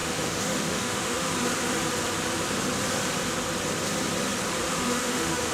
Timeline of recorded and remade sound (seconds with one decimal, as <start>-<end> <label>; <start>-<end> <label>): 0.0-1.3 remade; 1.3-4.6 recorded; 4.6-5.5 remade